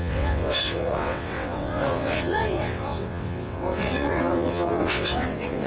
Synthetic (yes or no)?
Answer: yes